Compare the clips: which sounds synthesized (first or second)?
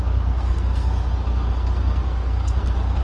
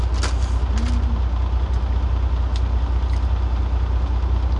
first